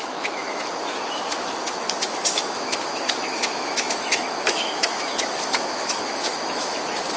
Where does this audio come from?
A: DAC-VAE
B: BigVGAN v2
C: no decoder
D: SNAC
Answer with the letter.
A